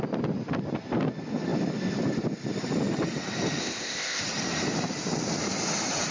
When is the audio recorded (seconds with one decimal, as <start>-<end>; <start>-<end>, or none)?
0.0-3.6; 4.2-6.1